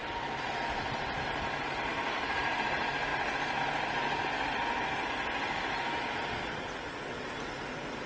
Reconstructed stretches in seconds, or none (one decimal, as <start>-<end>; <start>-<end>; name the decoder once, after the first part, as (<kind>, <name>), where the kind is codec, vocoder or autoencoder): none